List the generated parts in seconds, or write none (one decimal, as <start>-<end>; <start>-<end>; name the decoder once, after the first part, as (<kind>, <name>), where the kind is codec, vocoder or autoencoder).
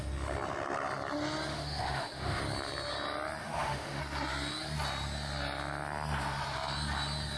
1.5-2.4 (autoencoder, DAC-VAE); 3.4-4.0